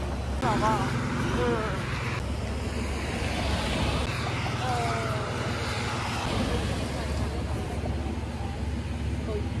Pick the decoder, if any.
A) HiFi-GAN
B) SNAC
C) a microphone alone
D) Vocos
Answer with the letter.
C